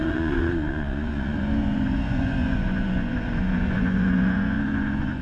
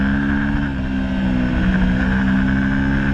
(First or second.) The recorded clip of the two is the second